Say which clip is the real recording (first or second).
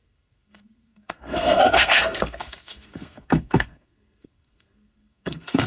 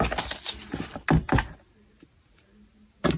second